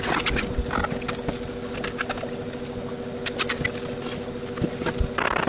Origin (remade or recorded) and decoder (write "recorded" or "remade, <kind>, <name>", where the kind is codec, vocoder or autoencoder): recorded